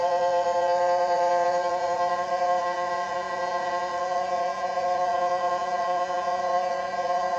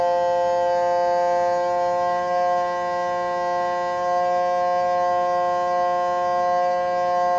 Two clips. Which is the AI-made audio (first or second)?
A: first